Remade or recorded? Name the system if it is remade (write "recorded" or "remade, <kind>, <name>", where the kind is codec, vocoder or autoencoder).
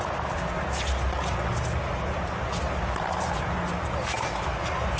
recorded